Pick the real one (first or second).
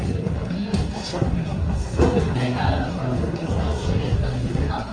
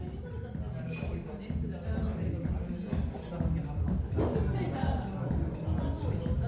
second